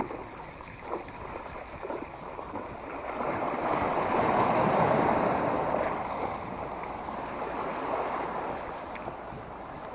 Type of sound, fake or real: real